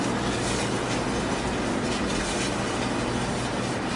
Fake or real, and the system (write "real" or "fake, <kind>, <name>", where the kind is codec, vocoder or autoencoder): real